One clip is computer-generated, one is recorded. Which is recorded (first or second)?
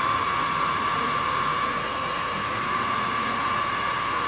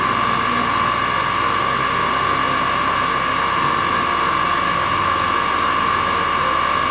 second